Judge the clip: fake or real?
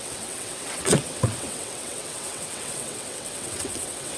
fake